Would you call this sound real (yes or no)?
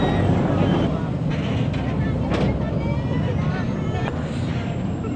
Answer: yes